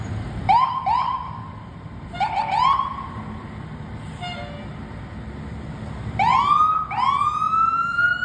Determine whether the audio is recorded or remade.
recorded